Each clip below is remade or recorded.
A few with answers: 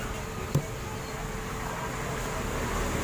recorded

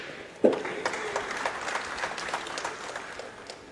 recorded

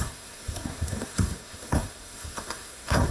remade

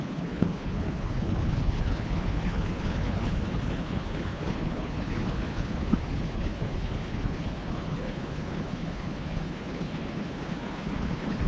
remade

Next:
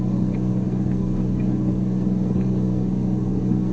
remade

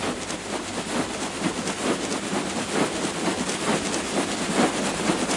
recorded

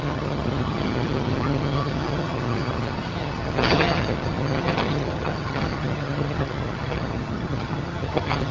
remade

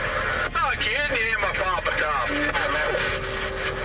recorded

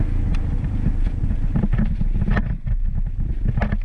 recorded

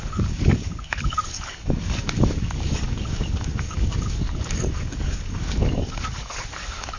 remade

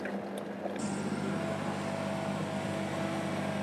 recorded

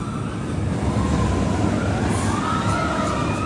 recorded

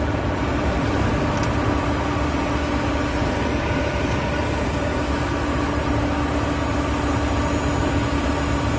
recorded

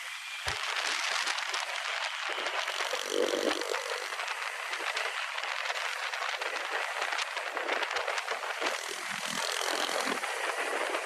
recorded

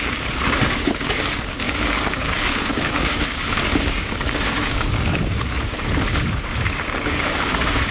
remade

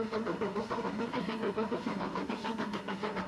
remade